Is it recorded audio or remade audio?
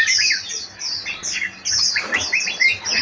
recorded